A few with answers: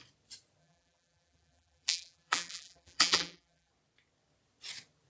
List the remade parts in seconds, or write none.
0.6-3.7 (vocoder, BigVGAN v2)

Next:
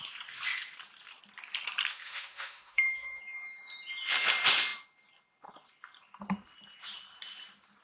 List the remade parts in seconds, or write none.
1.9-3.2 (autoencoder, DAC-VAE)

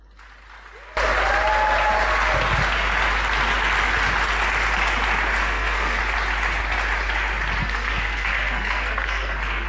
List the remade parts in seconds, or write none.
5.4-6.0 (codec, SNAC); 7.6-9.7

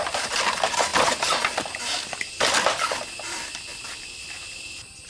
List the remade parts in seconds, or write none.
none

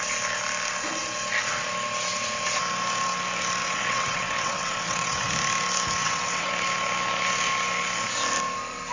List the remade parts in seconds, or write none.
3.6-5.3 (vocoder, WaveNeXt); 6.0-6.5

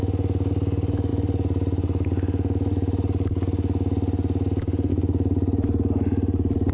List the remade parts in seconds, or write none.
none

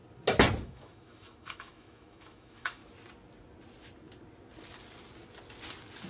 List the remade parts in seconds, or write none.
0.6-2.8 (autoencoder, DAC-VAE)

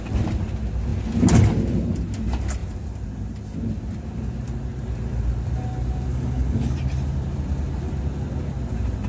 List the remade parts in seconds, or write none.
6.1-6.7 (codec, DAC)